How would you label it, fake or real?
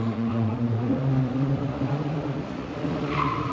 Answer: fake